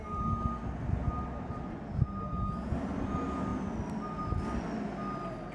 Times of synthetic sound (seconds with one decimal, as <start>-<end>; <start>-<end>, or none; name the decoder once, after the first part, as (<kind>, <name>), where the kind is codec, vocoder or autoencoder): none